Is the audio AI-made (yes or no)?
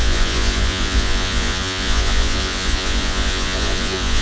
yes